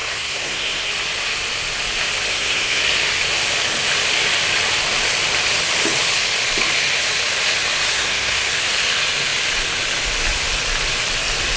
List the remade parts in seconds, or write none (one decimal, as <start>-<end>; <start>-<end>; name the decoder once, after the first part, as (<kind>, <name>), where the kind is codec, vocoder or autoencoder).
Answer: 0.0-0.9 (codec, SNAC); 2.3-2.8; 7.9-8.5